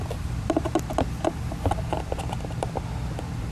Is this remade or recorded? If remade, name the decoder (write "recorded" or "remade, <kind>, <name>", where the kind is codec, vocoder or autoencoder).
remade, vocoder, BigVGAN v2